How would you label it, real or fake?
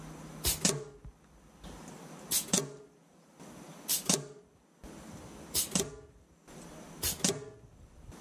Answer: real